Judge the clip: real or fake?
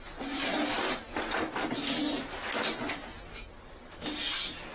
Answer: real